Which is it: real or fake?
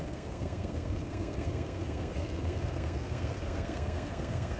fake